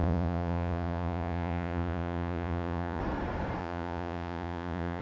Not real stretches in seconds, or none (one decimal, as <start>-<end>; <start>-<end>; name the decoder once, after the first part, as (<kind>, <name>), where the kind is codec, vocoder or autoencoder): 0.0-3.0 (vocoder, Vocos); 3.6-5.0